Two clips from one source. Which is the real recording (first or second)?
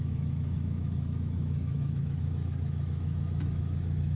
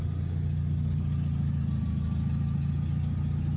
second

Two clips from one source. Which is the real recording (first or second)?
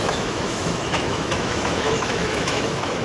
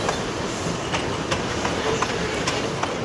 second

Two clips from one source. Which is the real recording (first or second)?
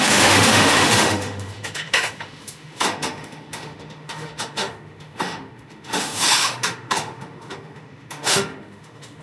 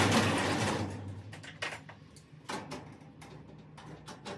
second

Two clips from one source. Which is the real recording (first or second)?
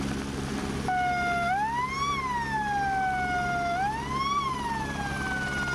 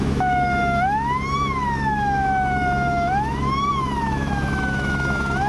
first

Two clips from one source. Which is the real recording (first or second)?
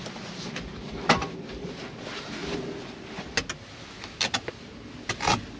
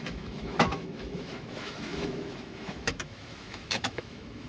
first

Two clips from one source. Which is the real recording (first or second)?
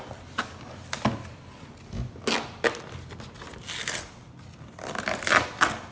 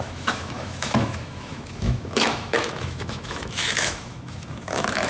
first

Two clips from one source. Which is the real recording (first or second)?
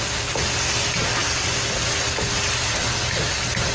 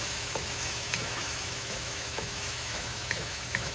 first